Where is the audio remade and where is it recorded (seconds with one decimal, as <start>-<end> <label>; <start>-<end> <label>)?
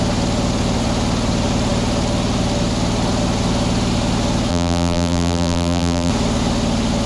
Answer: 0.0-4.5 recorded; 4.5-6.1 remade; 6.1-7.1 recorded